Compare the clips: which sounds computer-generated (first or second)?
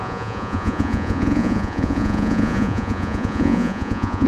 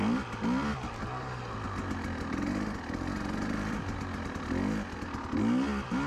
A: first